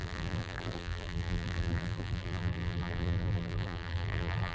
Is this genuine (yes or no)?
no